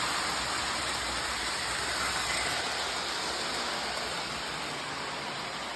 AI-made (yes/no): no